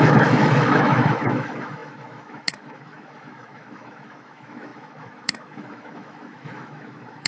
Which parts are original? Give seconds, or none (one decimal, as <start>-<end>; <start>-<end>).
none